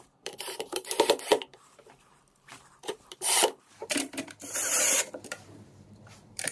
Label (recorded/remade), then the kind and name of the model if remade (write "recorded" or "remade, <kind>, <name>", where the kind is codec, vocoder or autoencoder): remade, vocoder, BigVGAN v2